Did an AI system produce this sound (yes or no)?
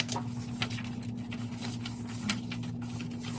no